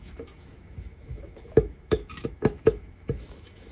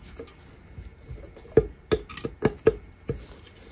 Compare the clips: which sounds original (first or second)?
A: second